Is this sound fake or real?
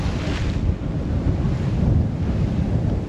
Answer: real